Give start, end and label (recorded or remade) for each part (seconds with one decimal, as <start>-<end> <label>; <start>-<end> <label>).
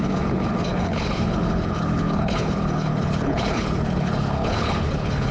0.0-5.3 remade